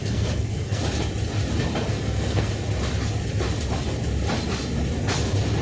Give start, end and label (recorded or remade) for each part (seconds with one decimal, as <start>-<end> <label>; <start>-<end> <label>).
0.0-0.8 remade; 0.8-1.9 recorded; 1.9-2.5 remade; 2.5-5.6 recorded